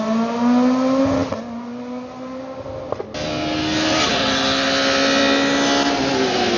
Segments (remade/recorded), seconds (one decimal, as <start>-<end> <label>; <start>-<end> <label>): 0.0-6.6 recorded